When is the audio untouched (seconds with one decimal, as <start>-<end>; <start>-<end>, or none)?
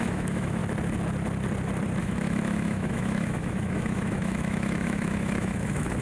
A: 0.6-2.0